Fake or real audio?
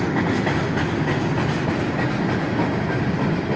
real